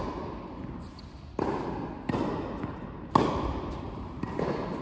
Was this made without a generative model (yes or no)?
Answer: yes